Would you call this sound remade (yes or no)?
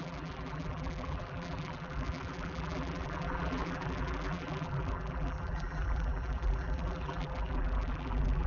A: yes